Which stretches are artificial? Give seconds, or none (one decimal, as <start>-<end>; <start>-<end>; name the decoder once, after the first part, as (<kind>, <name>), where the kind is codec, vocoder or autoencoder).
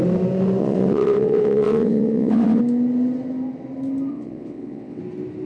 0.6-2.6 (vocoder, WaveNeXt); 4.1-5.0